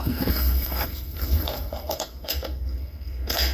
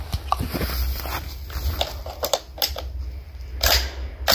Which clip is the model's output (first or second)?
first